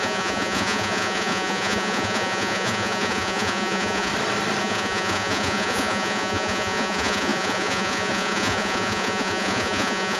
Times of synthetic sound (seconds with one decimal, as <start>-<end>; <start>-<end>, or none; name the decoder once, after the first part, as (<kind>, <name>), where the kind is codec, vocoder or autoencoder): 0.0-4.1 (vocoder, Vocos); 4.6-10.2